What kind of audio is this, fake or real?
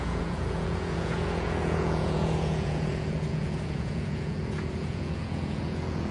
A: fake